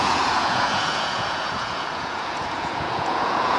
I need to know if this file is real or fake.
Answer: fake